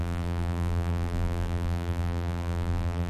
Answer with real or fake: fake